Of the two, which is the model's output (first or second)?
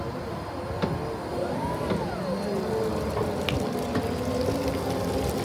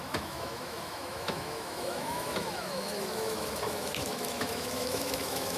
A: second